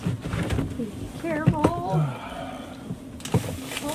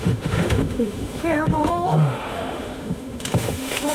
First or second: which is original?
first